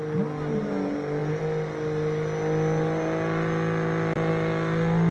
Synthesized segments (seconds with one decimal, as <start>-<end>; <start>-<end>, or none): none